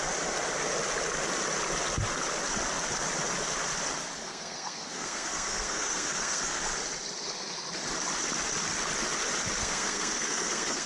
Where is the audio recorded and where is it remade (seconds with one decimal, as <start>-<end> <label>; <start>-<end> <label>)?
0.0-4.2 recorded; 4.2-6.6 remade; 6.6-9.6 recorded; 9.6-10.9 remade